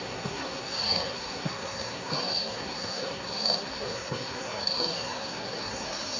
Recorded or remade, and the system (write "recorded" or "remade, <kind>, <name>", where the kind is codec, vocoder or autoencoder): remade, codec, SNAC